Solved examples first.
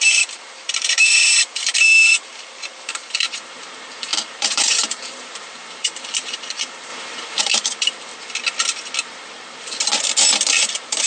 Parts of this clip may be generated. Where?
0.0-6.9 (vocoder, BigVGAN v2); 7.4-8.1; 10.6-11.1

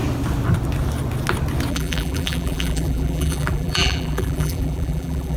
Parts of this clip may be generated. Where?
1.7-5.4 (vocoder, BigVGAN v2)

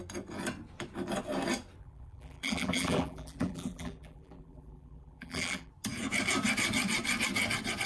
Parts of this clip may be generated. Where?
1.8-5.7 (vocoder, BigVGAN v2)

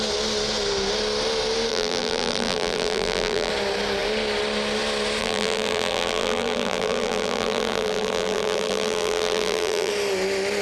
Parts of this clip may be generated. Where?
1.7-3.5 (vocoder, BigVGAN v2); 5.2-9.9

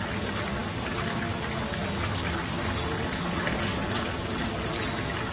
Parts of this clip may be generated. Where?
0.6-1.1 (vocoder, BigVGAN v2); 1.8-2.4

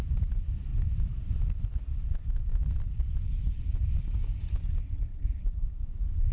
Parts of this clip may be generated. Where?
0.7-1.3 (vocoder, BigVGAN v2); 2.5-3.7; 5.1-6.3